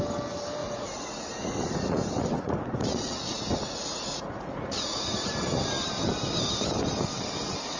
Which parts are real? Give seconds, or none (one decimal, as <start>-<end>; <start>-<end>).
0.0-0.6; 5.3-7.8